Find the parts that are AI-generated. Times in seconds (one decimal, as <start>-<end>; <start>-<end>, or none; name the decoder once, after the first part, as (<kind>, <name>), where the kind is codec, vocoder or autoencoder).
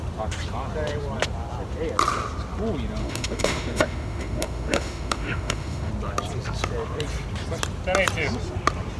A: 3.0-5.9 (autoencoder, DAC-VAE)